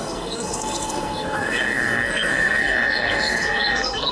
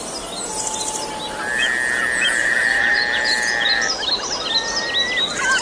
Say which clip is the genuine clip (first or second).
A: second